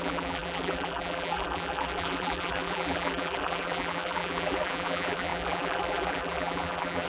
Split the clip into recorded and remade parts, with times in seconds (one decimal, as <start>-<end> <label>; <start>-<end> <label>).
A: 0.0-7.1 remade